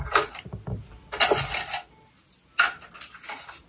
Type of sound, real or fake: real